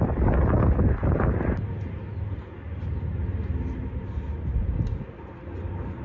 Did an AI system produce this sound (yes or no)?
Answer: no